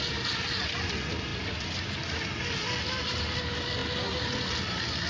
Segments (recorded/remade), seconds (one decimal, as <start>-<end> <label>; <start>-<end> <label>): 0.0-5.1 recorded